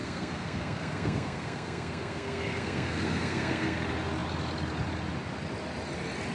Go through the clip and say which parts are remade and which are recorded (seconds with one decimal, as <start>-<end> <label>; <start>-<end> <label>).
0.0-3.8 remade; 3.8-6.3 recorded